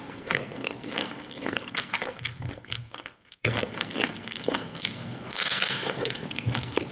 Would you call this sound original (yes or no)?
no